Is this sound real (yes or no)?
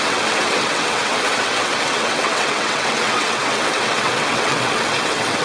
no